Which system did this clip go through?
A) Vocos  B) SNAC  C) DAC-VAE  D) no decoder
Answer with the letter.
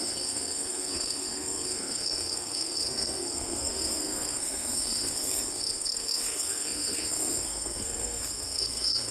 B